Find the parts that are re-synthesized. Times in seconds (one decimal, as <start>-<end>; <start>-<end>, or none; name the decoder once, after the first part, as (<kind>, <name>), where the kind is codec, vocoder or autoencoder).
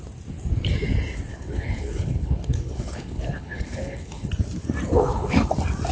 1.3-4.3 (codec, HILCodec); 4.9-5.5